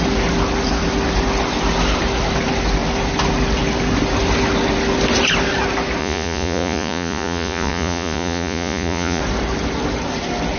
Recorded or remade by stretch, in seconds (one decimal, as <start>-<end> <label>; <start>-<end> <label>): 0.0-6.0 recorded; 6.0-9.2 remade; 9.2-10.6 recorded